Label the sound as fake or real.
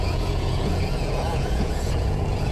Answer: fake